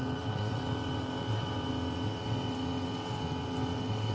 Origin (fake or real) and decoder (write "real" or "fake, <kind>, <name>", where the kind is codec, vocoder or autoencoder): fake, vocoder, WaveNeXt